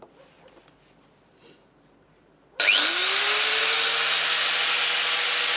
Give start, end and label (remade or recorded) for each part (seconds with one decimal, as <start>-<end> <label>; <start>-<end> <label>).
0.0-5.6 recorded